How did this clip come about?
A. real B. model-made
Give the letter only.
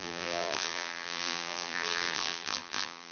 B